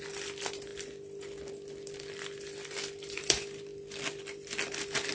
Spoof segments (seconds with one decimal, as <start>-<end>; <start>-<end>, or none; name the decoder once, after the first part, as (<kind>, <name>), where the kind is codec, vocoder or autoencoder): 0.0-3.7 (vocoder, BigVGAN v2); 4.2-5.1